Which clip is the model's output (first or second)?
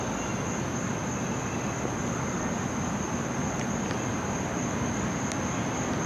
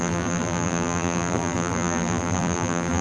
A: second